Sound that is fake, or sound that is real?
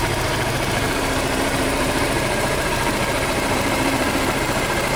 fake